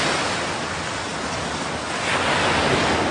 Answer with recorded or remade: recorded